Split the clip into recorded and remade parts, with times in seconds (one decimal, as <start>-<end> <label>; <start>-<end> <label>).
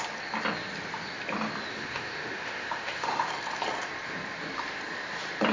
0.0-1.7 recorded; 1.7-3.3 remade; 3.3-5.5 recorded